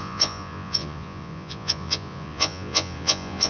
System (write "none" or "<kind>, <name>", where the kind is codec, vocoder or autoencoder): vocoder, Vocos